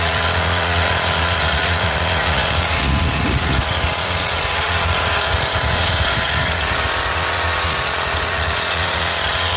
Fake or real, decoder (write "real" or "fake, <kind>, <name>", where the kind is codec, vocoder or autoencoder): fake, vocoder, Vocos